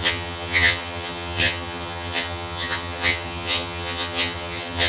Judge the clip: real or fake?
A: fake